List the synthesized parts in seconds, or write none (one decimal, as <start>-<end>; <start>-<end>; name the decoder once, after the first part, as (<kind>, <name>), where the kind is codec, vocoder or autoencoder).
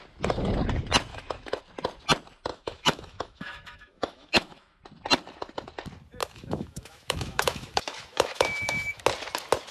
1.1-1.6 (autoencoder, DAC-VAE); 2.5-4.8; 6.2-9.0